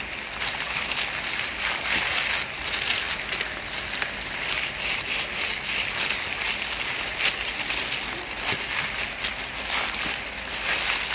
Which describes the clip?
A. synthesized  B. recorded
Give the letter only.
B